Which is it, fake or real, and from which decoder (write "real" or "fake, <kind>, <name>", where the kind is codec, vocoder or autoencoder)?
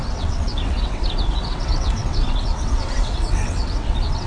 fake, vocoder, WaveNeXt